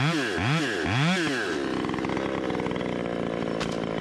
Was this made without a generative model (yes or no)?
yes